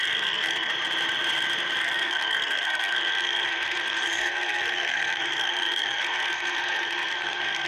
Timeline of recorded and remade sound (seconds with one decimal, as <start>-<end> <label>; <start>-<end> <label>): 0.0-0.7 remade; 0.7-1.8 recorded; 1.8-7.7 remade